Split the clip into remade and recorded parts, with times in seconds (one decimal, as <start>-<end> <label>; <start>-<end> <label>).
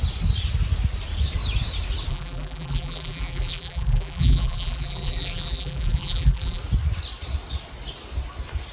0.0-2.1 recorded; 2.1-6.6 remade; 6.6-8.7 recorded